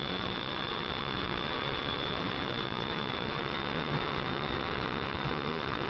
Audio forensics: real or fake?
fake